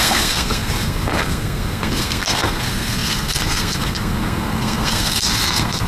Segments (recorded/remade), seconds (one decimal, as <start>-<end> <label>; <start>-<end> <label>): 0.0-5.9 remade